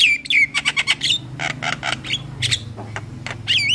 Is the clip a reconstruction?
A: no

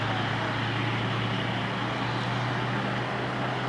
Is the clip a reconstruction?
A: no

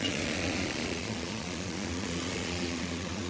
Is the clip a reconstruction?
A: yes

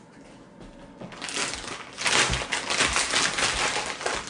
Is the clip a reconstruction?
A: no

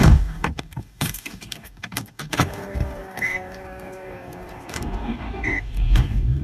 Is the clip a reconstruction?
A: yes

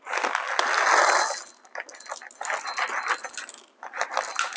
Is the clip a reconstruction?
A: no